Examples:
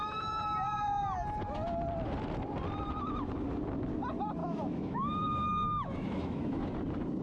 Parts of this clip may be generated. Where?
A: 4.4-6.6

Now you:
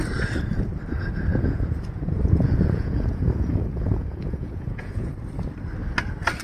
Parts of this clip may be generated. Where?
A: 1.3-5.1

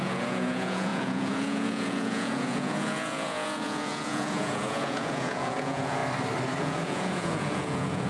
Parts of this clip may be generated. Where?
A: 0.0-6.0; 6.6-8.1

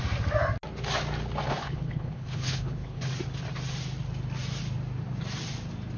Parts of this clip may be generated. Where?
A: 1.5-3.1

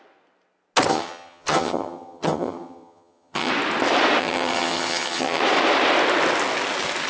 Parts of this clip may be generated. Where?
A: 0.9-3.5; 4.2-5.4

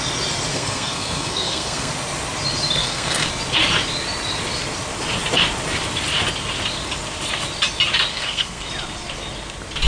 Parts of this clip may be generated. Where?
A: 0.5-1.9; 2.8-3.3; 8.1-8.7

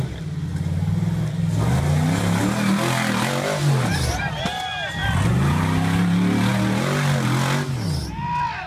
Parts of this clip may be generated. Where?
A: none

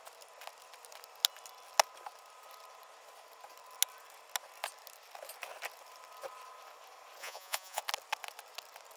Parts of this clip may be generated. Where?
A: 7.2-7.8